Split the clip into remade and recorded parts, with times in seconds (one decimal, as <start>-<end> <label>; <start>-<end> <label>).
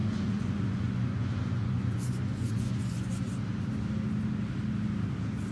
0.0-3.3 remade; 3.3-5.5 recorded